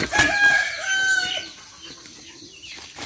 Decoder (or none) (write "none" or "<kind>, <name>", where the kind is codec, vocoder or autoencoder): none